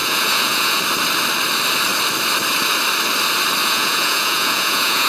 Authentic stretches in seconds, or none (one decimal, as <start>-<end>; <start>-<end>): 0.8-3.6